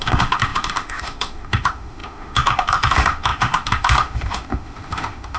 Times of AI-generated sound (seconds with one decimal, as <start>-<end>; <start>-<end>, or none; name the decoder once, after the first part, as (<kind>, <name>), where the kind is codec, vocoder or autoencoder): 0.0-5.4 (autoencoder, DAC-VAE)

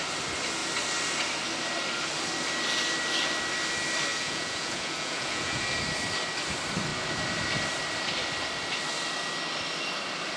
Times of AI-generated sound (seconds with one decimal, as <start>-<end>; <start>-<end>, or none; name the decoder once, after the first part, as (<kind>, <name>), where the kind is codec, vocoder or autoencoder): 4.1-5.6 (vocoder, Vocos)